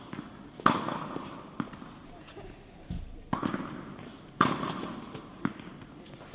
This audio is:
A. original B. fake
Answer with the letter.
A